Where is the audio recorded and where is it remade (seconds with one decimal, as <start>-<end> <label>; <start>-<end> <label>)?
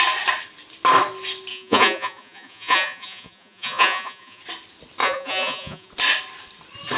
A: 0.0-1.5 recorded; 1.5-4.4 remade; 4.4-5.0 recorded; 5.0-5.9 remade; 5.9-7.0 recorded